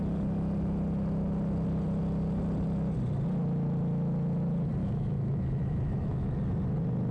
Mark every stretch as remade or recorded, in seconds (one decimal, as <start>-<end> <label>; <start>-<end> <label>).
0.0-4.8 recorded; 4.8-6.4 remade; 6.4-7.1 recorded